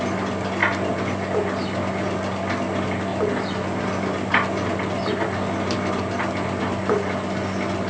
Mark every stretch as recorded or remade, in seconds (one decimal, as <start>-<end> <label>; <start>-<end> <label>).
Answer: 0.0-7.9 recorded